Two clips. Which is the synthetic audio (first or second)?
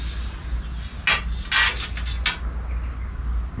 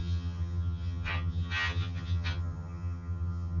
second